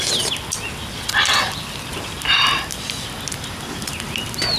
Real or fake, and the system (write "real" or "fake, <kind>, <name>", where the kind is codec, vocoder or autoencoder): real